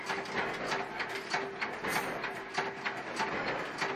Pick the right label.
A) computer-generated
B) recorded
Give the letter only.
B